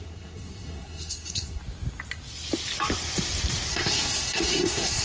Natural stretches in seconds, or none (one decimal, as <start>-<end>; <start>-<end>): 1.6-3.7